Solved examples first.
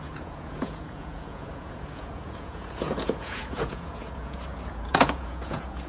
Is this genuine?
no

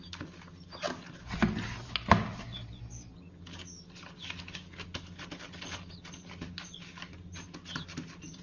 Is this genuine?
yes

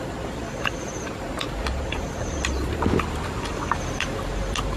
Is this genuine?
no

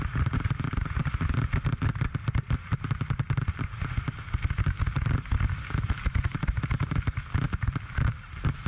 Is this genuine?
yes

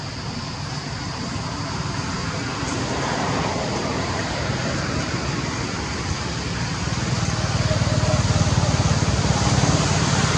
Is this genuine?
yes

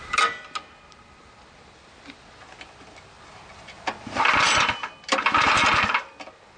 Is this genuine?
yes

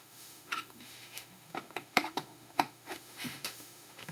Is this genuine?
no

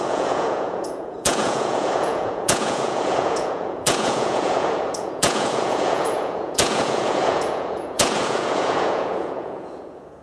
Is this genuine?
no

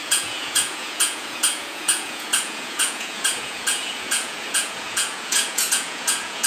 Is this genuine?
no